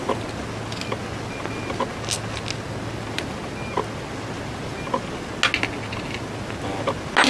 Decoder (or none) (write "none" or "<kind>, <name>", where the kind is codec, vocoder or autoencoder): none